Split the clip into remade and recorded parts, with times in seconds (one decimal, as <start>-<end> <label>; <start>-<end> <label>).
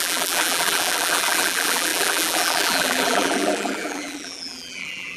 0.0-5.2 remade